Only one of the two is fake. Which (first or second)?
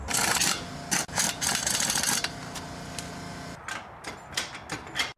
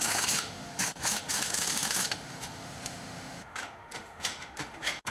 second